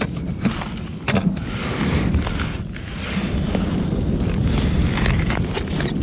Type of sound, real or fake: real